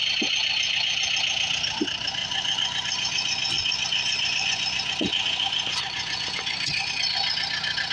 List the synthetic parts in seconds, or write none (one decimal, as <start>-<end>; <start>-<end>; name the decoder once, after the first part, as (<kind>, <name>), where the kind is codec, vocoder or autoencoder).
2.2-6.9 (vocoder, Vocos)